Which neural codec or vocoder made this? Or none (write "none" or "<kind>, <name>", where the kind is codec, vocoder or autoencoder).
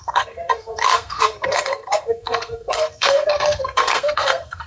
codec, SNAC